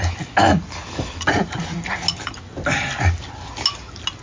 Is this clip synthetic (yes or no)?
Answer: no